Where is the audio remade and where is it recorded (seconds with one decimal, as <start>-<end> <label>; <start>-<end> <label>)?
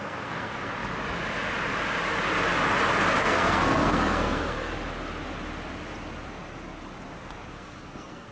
0.0-0.7 remade; 0.7-3.2 recorded; 3.2-4.7 remade; 4.7-7.5 recorded; 7.5-8.3 remade